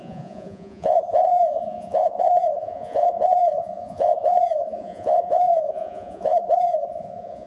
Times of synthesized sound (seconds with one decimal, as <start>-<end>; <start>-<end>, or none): 0.0-7.5